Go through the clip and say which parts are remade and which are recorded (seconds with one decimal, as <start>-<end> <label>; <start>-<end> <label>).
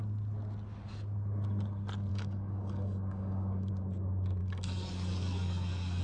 0.0-2.1 recorded; 2.1-3.7 remade; 3.7-4.4 recorded; 4.4-6.0 remade